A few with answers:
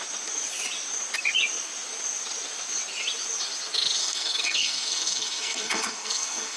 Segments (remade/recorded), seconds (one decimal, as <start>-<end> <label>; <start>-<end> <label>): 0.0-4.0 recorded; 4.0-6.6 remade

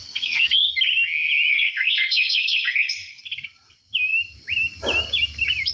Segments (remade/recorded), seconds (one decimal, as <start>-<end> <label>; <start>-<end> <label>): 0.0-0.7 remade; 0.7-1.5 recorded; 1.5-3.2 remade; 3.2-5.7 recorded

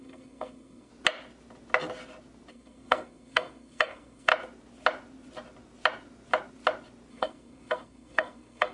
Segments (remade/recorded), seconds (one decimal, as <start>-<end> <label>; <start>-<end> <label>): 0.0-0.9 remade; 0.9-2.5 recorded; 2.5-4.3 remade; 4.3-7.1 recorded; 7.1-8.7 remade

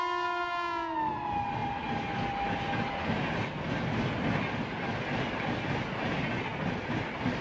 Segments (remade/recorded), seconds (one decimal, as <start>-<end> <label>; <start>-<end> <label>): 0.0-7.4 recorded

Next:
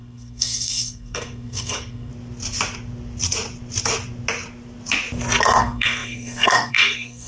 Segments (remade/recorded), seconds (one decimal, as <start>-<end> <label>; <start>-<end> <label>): 0.0-2.1 remade; 2.1-5.6 recorded; 5.6-7.3 remade

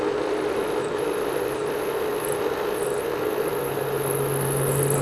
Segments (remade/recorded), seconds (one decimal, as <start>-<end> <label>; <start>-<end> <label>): 0.0-5.0 recorded

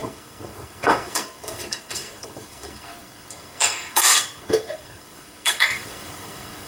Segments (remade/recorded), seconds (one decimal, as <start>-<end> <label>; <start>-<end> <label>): 0.0-6.7 remade

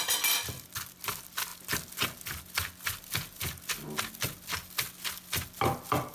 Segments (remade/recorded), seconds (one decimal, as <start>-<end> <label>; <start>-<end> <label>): 0.0-6.1 recorded